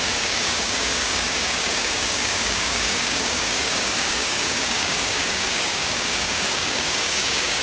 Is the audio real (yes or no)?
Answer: no